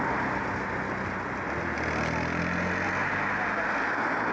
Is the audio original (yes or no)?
yes